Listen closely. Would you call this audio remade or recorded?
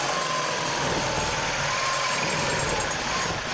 recorded